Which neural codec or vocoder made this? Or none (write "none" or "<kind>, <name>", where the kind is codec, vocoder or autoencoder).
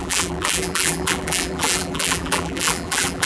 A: vocoder, BigVGAN v2